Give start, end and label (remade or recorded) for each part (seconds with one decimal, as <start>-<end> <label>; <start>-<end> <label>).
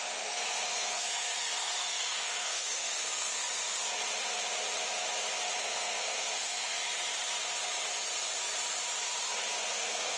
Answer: 0.0-3.4 remade; 3.4-5.6 recorded; 5.6-6.8 remade; 6.8-9.7 recorded; 9.7-10.2 remade